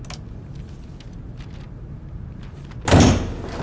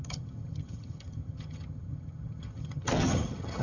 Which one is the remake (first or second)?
second